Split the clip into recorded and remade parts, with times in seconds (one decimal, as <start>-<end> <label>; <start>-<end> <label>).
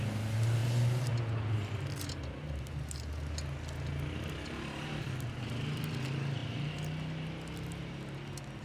0.0-8.6 recorded